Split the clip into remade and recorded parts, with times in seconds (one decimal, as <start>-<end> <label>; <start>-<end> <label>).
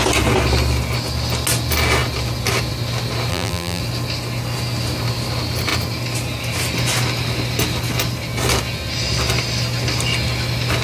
0.0-3.3 recorded; 3.3-3.8 remade; 3.8-10.8 recorded